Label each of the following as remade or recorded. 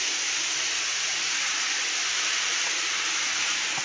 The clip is recorded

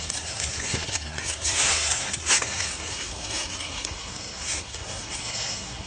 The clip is remade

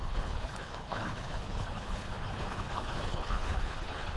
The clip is remade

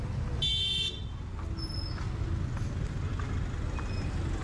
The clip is recorded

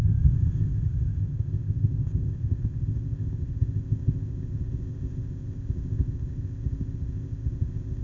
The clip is remade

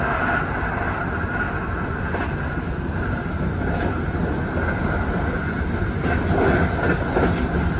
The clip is recorded